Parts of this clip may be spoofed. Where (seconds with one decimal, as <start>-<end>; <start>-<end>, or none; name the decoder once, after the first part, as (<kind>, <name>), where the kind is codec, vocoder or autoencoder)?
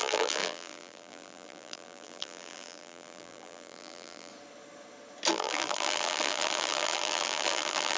0.0-4.3 (vocoder, BigVGAN v2); 5.3-8.0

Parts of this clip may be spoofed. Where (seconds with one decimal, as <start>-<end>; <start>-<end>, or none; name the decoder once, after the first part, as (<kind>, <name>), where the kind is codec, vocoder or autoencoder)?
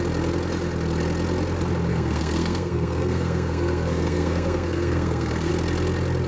1.9-5.5 (codec, SNAC)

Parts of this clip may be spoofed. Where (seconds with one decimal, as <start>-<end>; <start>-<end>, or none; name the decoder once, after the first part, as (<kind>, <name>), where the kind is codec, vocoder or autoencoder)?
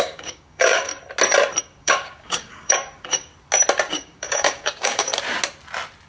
0.0-0.9 (codec, DAC); 1.6-3.3; 3.9-5.1